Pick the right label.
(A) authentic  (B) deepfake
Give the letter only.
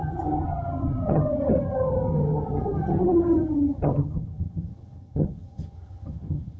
B